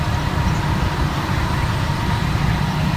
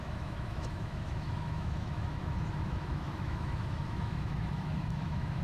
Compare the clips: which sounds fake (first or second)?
second